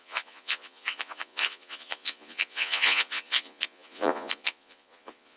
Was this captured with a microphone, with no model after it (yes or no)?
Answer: no